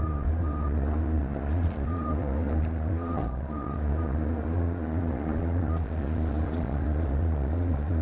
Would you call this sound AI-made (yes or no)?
yes